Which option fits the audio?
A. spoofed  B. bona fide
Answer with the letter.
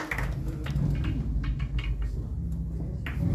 B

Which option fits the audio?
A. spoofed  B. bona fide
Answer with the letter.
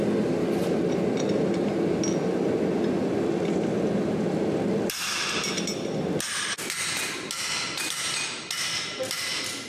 B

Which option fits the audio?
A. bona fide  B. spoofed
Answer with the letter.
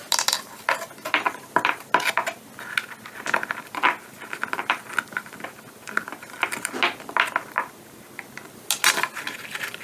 A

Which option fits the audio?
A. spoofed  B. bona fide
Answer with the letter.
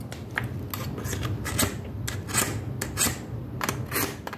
B